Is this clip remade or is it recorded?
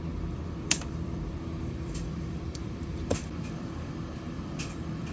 remade